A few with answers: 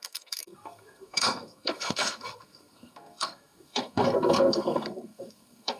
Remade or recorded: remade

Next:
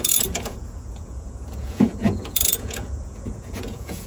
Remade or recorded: remade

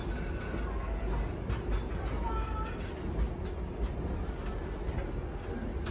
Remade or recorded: recorded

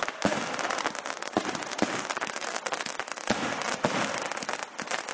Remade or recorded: recorded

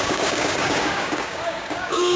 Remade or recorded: remade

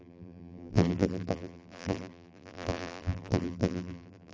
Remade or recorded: remade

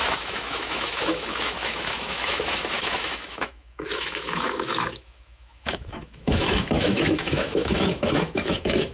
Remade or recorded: remade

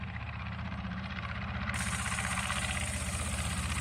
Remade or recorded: remade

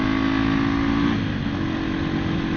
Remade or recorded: recorded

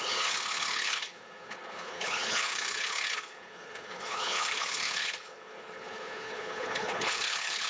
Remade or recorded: remade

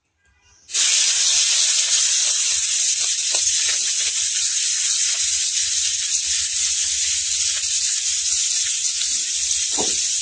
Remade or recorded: recorded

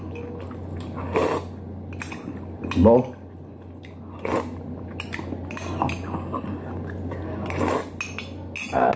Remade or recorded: recorded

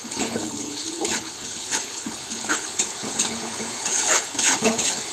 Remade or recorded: remade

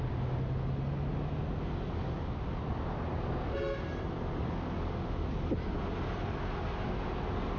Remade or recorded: recorded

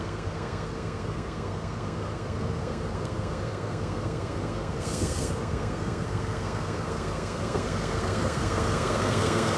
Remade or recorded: remade